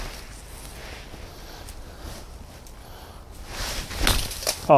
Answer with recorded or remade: recorded